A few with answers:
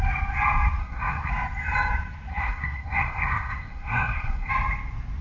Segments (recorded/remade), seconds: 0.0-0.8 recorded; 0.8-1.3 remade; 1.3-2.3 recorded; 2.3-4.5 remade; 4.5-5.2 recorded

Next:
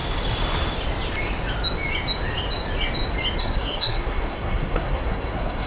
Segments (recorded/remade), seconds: 0.0-3.4 recorded; 3.4-5.7 remade

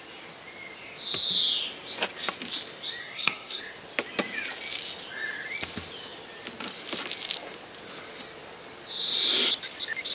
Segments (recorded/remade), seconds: 0.0-3.0 recorded; 3.0-3.6 remade; 3.6-10.1 recorded

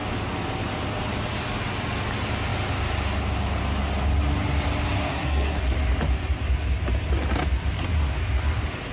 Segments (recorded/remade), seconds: 0.0-5.1 recorded; 5.1-5.6 remade; 5.6-8.9 recorded

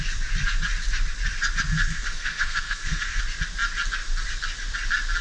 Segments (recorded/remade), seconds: 0.0-1.7 recorded; 1.7-3.2 remade; 3.2-5.2 recorded